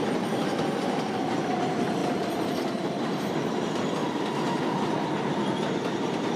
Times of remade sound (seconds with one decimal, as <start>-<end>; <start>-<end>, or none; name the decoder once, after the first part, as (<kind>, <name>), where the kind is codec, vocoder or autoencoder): 2.0-3.6 (vocoder, BigVGAN v2)